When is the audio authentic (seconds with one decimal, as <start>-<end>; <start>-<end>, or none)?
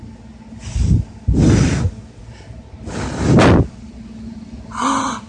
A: 0.0-5.3